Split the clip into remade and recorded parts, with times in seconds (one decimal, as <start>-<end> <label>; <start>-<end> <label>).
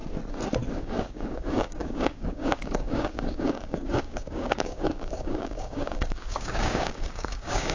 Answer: 0.0-0.7 recorded; 0.7-7.7 remade